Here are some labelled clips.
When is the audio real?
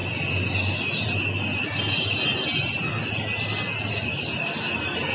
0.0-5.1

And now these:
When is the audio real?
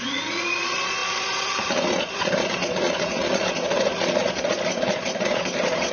none